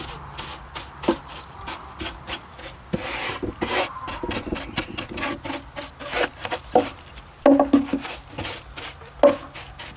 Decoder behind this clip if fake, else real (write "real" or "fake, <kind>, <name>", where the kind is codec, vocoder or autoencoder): real